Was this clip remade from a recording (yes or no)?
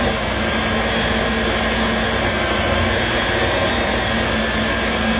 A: no